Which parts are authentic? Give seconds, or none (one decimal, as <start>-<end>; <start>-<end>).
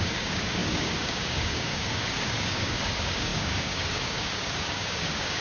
none